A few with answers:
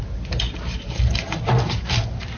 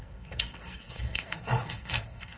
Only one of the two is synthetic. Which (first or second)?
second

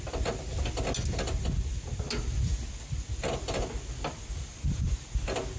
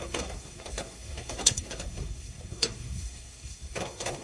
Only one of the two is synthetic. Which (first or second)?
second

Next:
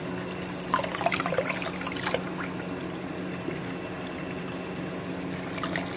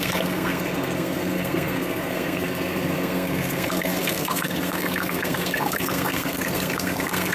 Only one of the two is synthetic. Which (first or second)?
second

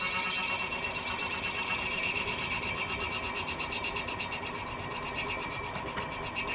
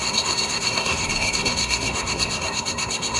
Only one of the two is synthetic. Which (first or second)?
second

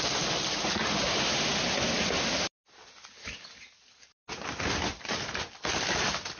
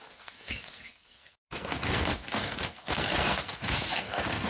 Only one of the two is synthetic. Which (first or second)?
second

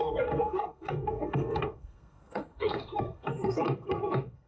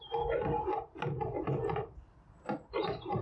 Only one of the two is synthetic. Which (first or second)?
first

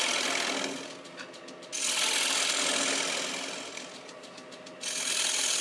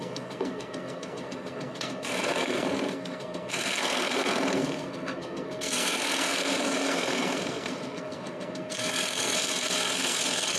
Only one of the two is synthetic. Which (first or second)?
second